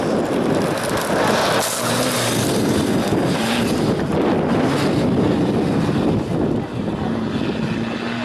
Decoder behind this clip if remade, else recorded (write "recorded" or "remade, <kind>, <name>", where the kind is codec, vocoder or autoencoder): recorded